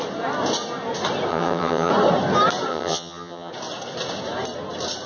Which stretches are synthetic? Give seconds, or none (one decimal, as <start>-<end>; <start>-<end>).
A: 1.3-1.9; 2.7-3.5